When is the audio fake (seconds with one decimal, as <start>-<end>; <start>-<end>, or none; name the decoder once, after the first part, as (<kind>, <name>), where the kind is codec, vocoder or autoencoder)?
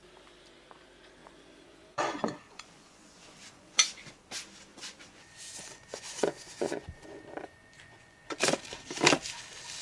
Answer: 1.2-4.1 (vocoder, Vocos); 4.7-8.4